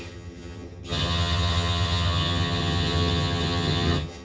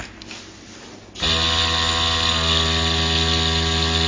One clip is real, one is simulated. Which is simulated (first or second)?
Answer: first